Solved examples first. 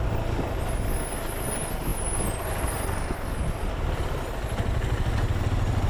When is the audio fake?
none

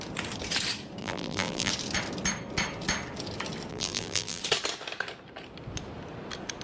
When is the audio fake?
1.0-1.7; 3.7-4.4

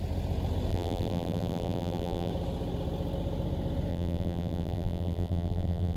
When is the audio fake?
0.7-2.3; 3.9-6.0

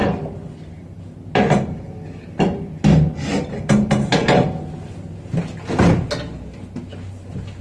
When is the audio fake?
none

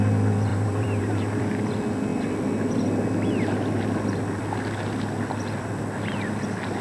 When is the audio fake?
0.5-1.4

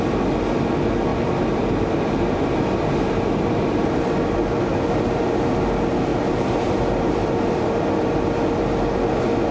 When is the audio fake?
1.1-4.0; 6.1-7.8

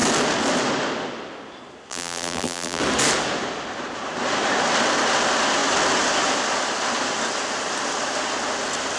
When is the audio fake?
1.9-2.8